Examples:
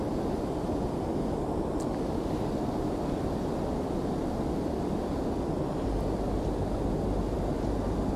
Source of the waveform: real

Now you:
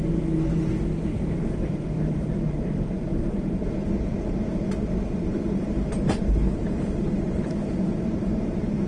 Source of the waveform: fake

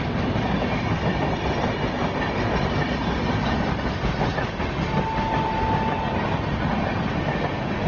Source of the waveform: real